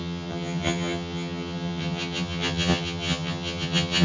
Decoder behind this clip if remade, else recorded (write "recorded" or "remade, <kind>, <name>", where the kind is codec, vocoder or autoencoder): remade, vocoder, HiFi-GAN